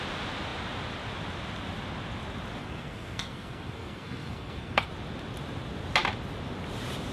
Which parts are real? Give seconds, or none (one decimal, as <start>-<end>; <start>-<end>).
0.0-2.6; 4.9-7.1